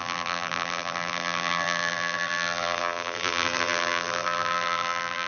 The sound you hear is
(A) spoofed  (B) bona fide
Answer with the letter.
A